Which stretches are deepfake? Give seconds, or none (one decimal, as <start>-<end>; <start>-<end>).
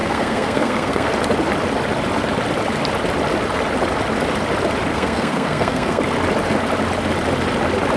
0.0-1.1; 4.9-6.0